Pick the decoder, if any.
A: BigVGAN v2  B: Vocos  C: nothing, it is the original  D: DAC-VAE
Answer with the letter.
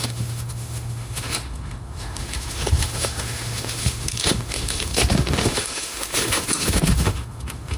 D